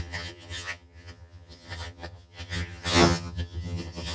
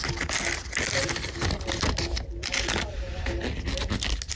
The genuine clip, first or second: second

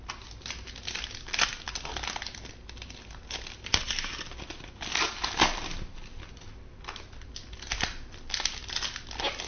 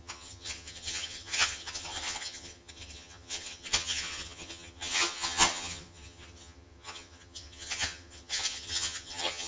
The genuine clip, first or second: first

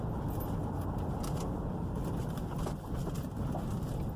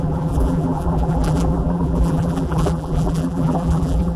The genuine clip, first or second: first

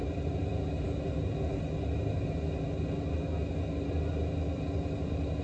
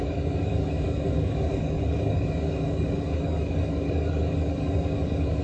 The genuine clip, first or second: first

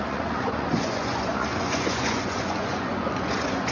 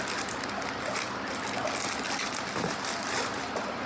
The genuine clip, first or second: second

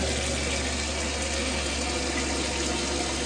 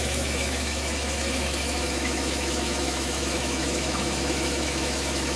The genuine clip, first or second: first